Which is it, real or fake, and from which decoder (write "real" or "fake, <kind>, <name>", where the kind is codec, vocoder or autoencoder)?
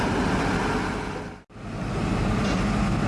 real